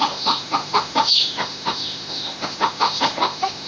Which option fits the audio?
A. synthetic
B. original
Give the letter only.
A